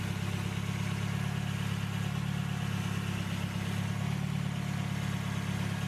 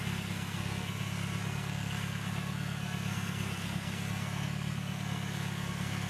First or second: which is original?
first